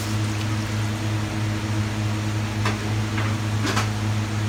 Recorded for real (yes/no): yes